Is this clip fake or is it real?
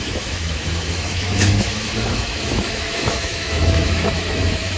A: fake